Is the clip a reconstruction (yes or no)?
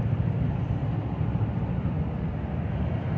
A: no